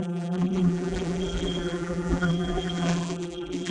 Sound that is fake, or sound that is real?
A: fake